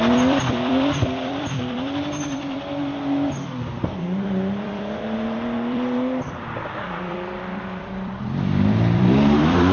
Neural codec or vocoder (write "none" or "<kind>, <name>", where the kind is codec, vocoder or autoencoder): vocoder, BigVGAN v2